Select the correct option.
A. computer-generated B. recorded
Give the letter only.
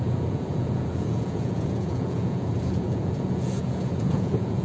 A